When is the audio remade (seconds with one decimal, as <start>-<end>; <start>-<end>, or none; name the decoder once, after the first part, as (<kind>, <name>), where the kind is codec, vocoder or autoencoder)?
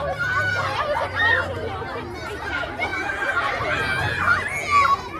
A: 2.9-3.6 (vocoder, BigVGAN v2)